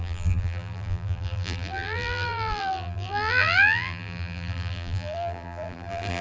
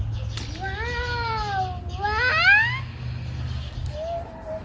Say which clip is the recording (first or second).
second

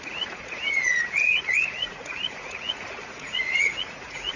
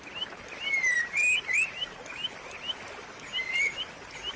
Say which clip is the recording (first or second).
second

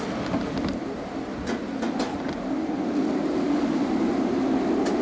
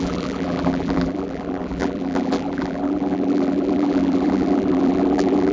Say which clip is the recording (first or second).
first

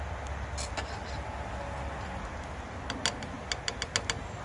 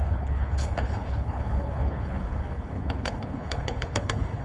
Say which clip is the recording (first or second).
first